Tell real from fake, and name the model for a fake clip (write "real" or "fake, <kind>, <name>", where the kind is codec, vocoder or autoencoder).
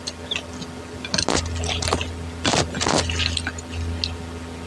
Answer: real